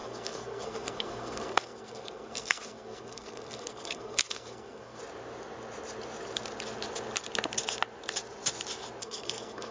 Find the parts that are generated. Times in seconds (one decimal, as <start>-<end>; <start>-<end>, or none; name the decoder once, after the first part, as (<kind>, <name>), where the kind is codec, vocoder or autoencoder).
0.0-5.0 (codec, SNAC); 9.0-9.7